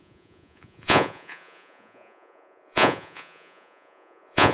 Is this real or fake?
fake